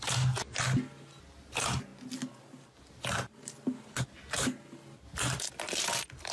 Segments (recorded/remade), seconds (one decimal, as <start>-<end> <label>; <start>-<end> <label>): 0.0-6.3 recorded